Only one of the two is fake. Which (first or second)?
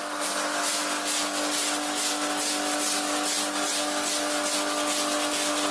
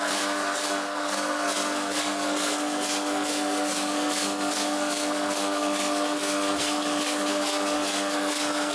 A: second